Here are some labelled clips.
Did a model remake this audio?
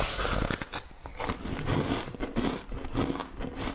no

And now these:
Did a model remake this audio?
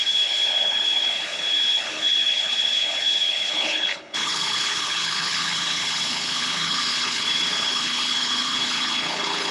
yes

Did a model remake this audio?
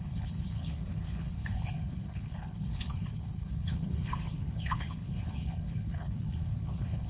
yes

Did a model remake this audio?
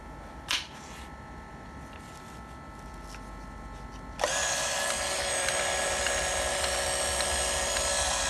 no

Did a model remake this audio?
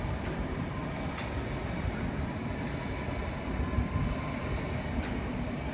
no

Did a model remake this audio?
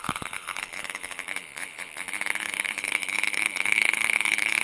yes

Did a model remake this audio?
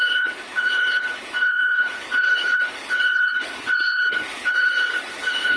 yes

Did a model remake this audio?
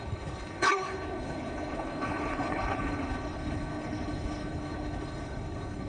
yes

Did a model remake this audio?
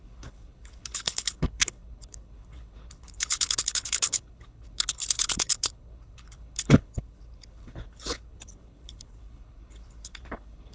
yes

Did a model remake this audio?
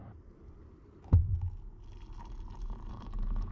no